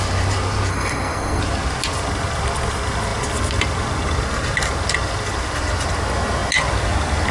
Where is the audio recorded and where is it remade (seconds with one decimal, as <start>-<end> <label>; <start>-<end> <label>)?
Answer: 0.0-0.7 recorded; 0.7-1.4 remade; 1.4-7.3 recorded